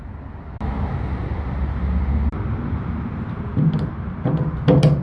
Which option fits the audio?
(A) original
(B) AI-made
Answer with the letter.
A